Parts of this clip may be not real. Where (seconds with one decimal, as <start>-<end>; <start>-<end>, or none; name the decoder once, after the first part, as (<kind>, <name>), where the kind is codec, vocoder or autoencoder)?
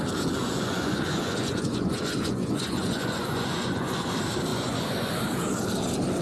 0.4-4.1 (vocoder, Vocos); 4.5-5.1